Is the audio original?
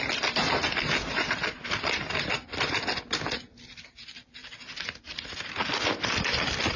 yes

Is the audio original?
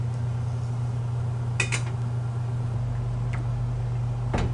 yes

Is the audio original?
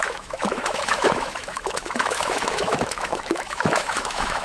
no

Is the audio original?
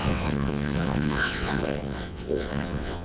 no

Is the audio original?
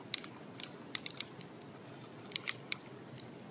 yes